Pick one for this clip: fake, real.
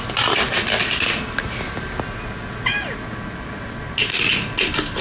real